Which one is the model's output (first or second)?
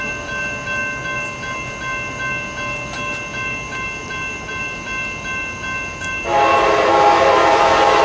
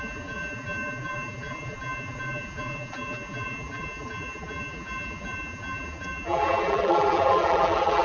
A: second